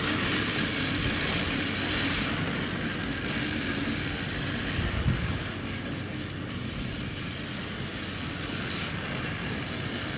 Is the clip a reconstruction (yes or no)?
no